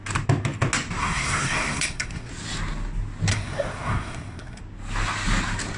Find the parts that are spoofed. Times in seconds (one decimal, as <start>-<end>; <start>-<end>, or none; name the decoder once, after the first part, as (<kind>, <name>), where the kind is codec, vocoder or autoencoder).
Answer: 1.0-2.3 (codec, SNAC); 3.3-4.6